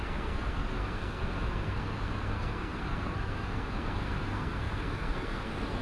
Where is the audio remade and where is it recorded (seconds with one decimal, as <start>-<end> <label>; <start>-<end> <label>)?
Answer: 0.0-5.8 remade